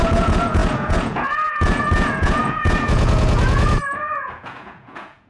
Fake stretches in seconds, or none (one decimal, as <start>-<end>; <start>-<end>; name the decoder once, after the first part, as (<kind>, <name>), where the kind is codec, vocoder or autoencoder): 0.0-5.3 (vocoder, Vocos)